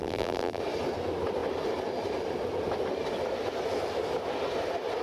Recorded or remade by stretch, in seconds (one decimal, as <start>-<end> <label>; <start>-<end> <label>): 0.0-0.6 remade; 0.6-5.0 recorded